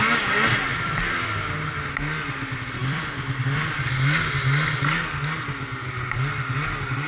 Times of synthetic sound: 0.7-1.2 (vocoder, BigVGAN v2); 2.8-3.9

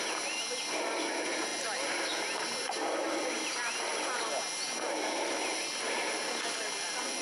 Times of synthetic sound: none

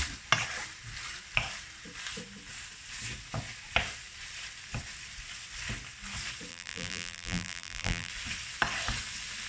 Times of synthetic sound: 6.5-8.1 (vocoder, BigVGAN v2)

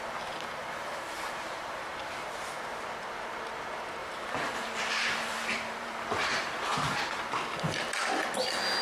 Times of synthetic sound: 0.6-1.8 (vocoder, BigVGAN v2); 4.0-7.2

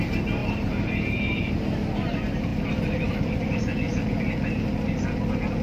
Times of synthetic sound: 0.4-1.4 (vocoder, BigVGAN v2); 2.5-3.1

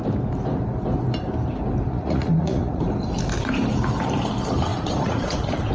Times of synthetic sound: 1.9-2.8 (vocoder, Vocos); 4.7-5.7